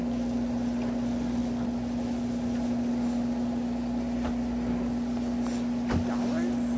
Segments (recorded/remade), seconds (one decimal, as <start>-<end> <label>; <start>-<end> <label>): 0.0-6.8 recorded